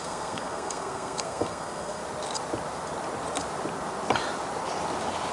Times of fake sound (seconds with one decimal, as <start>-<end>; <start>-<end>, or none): 0.0-2.0